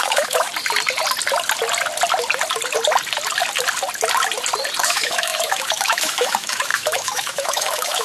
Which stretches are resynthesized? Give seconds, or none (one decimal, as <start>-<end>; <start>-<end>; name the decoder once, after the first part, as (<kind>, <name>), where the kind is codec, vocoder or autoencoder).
0.0-0.5 (autoencoder, DAC-VAE); 4.8-8.0